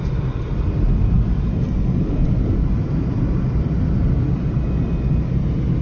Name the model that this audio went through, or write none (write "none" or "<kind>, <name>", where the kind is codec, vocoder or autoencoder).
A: none